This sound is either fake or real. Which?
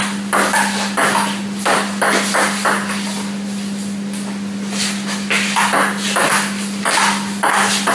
real